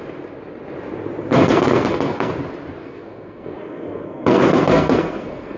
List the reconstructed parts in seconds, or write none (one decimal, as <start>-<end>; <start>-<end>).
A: 1.3-2.3; 2.8-5.6